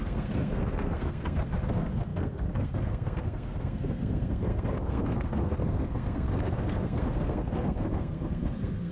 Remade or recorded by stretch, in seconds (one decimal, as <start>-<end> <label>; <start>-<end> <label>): 0.0-8.9 remade